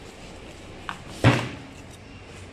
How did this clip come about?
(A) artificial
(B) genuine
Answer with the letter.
B